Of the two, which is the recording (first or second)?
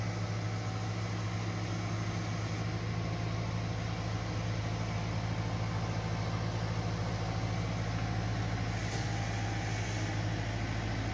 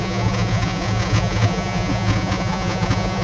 first